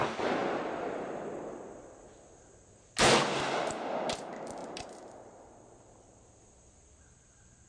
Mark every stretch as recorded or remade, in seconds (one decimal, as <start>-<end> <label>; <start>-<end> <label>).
0.0-4.6 recorded; 4.6-6.3 remade; 6.3-7.7 recorded